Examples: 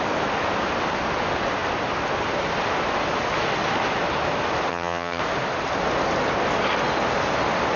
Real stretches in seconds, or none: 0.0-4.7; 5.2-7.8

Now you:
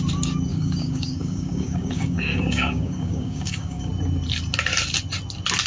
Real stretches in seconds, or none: 0.0-0.5; 3.9-5.7